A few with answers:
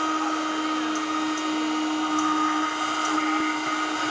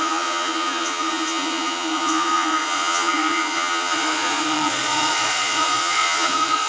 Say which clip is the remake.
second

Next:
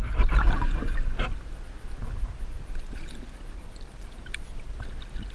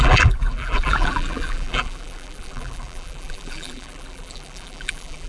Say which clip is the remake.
second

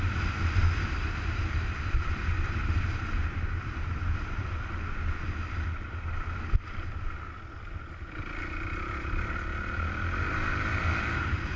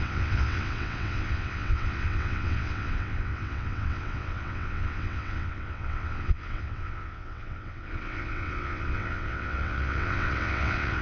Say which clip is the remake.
second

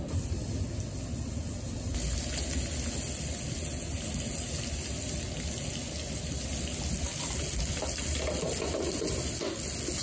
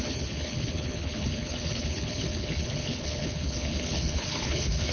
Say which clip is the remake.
second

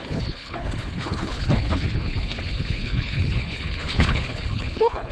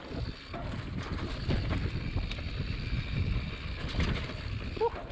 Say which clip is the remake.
first